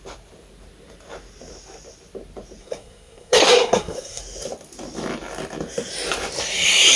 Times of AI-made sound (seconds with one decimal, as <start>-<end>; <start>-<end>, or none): 2.6-4.2